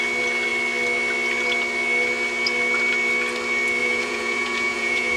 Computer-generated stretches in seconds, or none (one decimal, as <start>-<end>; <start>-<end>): 3.8-5.2